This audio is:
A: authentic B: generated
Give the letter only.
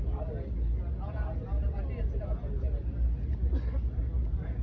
A